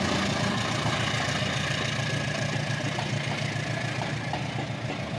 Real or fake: real